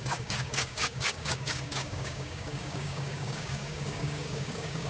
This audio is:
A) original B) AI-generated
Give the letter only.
B